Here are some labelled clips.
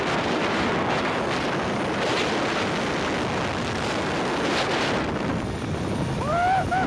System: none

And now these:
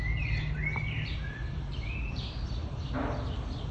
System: none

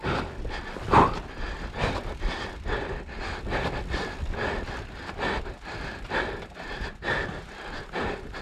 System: none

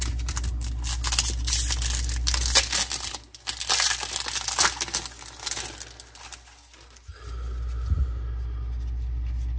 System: none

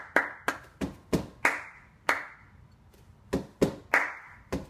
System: none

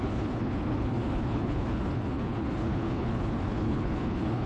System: codec, HILCodec